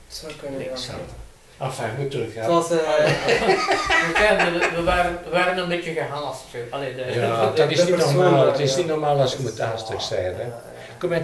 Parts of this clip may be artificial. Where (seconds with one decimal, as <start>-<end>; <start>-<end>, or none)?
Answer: 1.5-4.3; 5.4-7.7